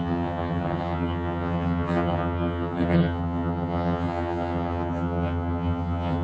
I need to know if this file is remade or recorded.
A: remade